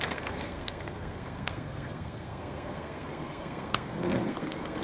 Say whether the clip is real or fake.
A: fake